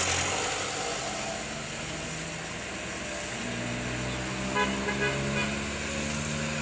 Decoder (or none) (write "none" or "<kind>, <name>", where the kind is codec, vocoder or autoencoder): none